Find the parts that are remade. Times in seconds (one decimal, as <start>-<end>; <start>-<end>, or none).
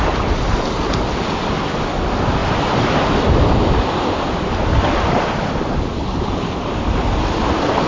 none